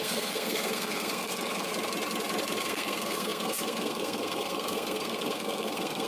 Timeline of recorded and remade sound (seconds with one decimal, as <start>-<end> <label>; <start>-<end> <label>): 0.0-1.7 remade; 1.7-2.6 recorded; 2.6-6.1 remade